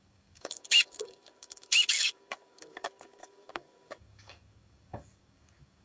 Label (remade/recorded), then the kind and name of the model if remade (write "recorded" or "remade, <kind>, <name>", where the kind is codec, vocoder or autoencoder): remade, codec, DAC